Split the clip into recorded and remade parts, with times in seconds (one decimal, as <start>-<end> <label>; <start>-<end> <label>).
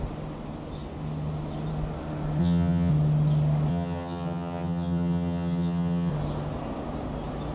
0.0-2.4 recorded; 2.4-2.9 remade; 2.9-3.7 recorded; 3.7-6.1 remade; 6.1-7.5 recorded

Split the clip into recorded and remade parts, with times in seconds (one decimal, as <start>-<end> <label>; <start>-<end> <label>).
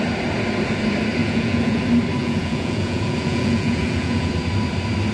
0.0-1.2 recorded; 1.2-1.8 remade; 1.8-2.2 recorded; 2.2-4.3 remade; 4.3-5.1 recorded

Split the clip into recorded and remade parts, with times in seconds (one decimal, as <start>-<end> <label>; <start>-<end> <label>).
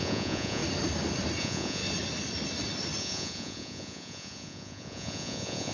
0.0-0.6 remade; 0.6-1.4 recorded; 1.4-1.8 remade; 1.8-3.0 recorded; 3.0-5.7 remade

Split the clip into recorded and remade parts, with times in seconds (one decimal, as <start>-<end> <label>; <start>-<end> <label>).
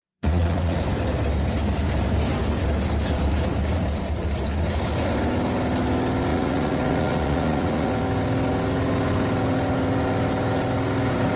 0.0-0.8 remade; 0.8-6.3 recorded; 6.3-7.9 remade; 7.9-11.4 recorded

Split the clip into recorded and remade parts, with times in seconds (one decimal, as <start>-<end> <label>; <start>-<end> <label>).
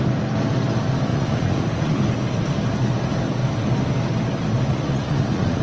0.0-1.1 recorded; 1.1-2.0 remade; 2.0-4.7 recorded; 4.7-5.6 remade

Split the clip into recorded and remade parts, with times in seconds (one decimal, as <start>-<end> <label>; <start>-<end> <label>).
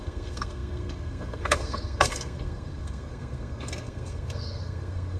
0.0-5.2 remade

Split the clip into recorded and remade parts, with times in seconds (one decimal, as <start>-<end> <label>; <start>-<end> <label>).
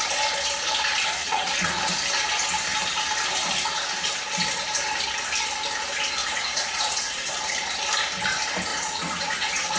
0.0-1.2 recorded; 1.2-1.8 remade; 1.8-6.2 recorded; 6.2-7.3 remade; 7.3-8.7 recorded; 8.7-9.8 remade